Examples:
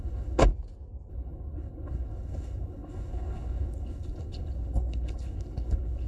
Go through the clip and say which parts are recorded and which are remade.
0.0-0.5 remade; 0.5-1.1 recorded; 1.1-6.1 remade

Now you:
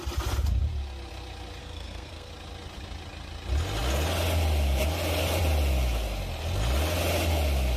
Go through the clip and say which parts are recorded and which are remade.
0.0-1.6 recorded; 1.6-2.3 remade; 2.3-7.8 recorded

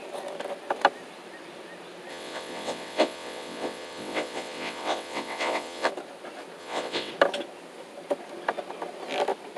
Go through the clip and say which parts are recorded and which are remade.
0.0-2.1 recorded; 2.1-5.9 remade; 5.9-6.6 recorded; 6.6-7.1 remade; 7.1-9.6 recorded

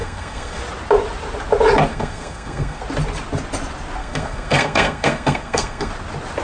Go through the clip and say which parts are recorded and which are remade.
0.0-0.6 remade; 0.6-1.9 recorded; 1.9-2.8 remade; 2.8-4.0 recorded; 4.0-5.9 remade; 5.9-6.4 recorded

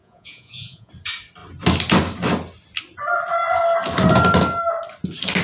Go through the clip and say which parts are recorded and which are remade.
0.0-0.9 remade; 0.9-5.4 recorded

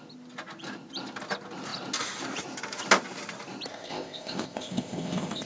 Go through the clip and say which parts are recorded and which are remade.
0.0-3.7 recorded; 3.7-5.5 remade